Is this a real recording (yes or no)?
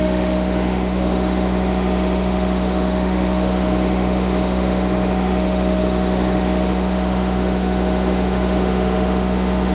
no